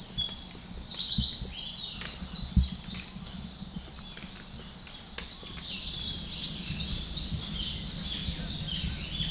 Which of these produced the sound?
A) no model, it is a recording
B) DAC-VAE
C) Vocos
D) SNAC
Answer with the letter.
A